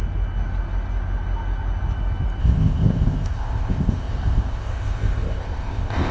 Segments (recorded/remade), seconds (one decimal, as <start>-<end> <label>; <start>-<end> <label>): 0.0-2.4 recorded; 2.4-6.1 remade